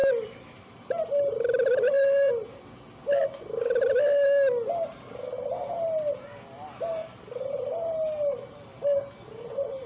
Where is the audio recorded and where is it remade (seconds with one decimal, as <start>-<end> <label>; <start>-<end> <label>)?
0.0-2.3 remade; 2.3-7.0 recorded; 7.0-7.5 remade; 7.5-9.9 recorded